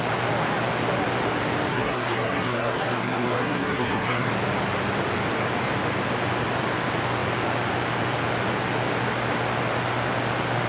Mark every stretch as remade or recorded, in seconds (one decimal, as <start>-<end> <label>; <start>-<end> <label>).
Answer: 0.0-1.7 recorded; 1.7-4.3 remade; 4.3-10.7 recorded